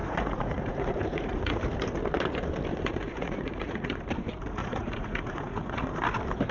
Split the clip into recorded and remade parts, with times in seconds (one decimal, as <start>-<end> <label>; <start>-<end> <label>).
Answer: 0.0-1.6 remade; 1.6-2.7 recorded; 2.7-4.0 remade; 4.0-4.6 recorded; 4.6-6.0 remade; 6.0-6.5 recorded